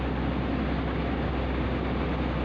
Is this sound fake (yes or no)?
no